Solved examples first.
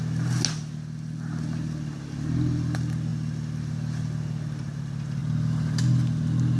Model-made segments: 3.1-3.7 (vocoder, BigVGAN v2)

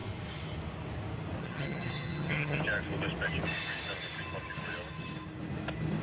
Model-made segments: 1.4-2.6 (vocoder, HiFi-GAN)

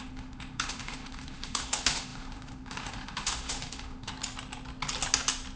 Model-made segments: 0.0-4.1 (autoencoder, DAC-VAE)

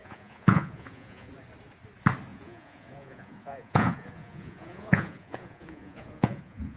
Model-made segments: 0.0-1.3 (vocoder, Vocos); 2.3-6.8

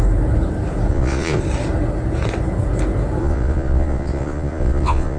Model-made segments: 0.9-1.4 (vocoder, Vocos); 3.2-5.2

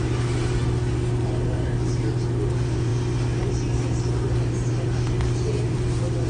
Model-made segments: none